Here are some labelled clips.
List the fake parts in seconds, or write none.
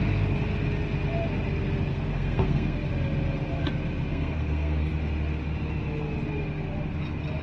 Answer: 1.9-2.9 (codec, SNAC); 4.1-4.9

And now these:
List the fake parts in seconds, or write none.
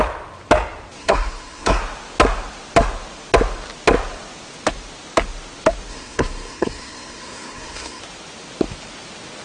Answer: 1.0-1.8 (codec, SNAC); 5.9-8.0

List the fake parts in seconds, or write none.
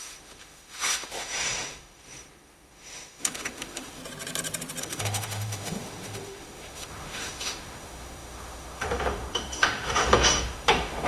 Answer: 0.0-4.0 (autoencoder, DAC-VAE); 4.8-11.1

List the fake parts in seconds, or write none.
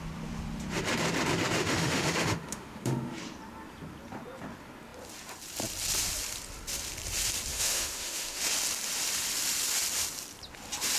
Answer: 1.6-3.2 (autoencoder, DAC-VAE); 7.5-8.4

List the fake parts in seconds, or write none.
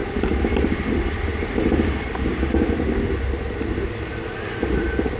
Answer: 0.0-0.9 (vocoder, BigVGAN v2)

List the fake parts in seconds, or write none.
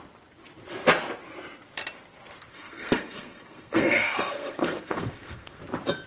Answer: 2.5-5.6 (codec, SNAC)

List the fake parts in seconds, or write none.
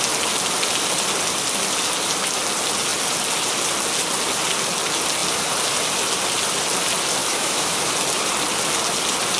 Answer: 7.2-7.9 (autoencoder, DAC-VAE)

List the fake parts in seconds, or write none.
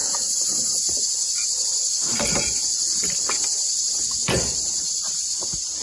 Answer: 0.0-5.8 (vocoder, BigVGAN v2)